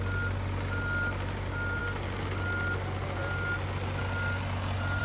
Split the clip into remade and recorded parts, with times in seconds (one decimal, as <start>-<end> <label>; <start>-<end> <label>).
0.0-5.0 recorded

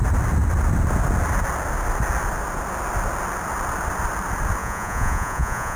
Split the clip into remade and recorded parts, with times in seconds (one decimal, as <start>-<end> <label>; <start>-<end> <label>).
0.0-4.6 recorded; 4.6-5.8 remade

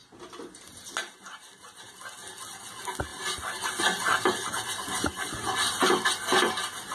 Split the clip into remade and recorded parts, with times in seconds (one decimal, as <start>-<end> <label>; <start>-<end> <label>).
0.0-6.9 recorded